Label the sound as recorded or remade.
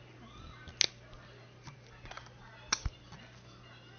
recorded